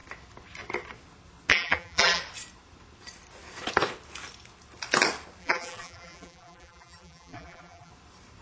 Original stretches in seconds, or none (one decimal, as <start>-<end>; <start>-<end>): 0.0-1.5; 2.2-5.4; 7.9-8.4